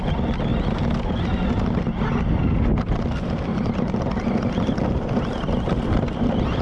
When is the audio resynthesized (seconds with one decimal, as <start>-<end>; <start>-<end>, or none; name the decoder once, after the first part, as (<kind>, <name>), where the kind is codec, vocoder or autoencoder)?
3.5-6.6 (vocoder, BigVGAN v2)